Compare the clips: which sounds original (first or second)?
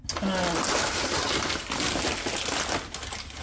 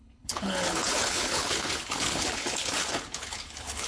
first